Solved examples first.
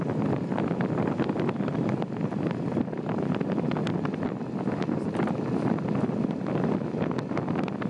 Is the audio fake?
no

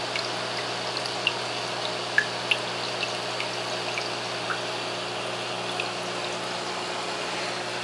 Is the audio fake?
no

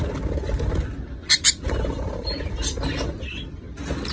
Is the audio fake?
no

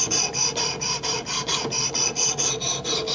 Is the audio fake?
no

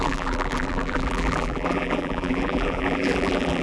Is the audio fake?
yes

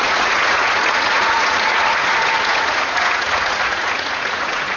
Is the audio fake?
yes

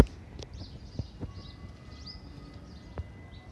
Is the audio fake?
no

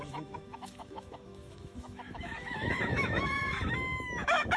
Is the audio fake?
yes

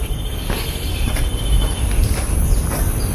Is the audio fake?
yes